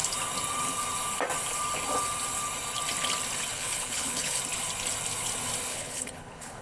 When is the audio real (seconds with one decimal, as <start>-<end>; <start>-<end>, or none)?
0.0-3.5; 4.4-5.7